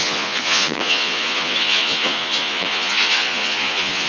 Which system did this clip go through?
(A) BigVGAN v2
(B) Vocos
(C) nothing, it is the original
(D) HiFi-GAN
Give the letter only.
B